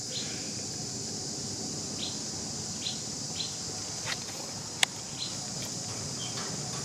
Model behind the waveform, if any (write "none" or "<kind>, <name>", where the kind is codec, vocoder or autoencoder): none